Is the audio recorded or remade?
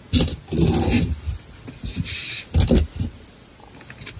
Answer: recorded